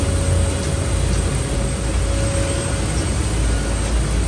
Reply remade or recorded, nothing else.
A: recorded